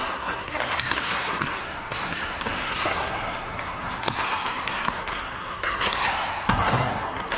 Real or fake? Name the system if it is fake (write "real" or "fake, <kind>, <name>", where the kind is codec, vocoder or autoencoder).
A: fake, codec, SNAC